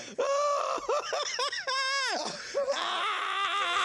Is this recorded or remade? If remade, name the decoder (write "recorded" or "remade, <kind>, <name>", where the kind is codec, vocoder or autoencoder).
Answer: recorded